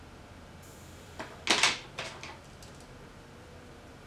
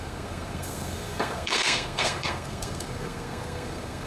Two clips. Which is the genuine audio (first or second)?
first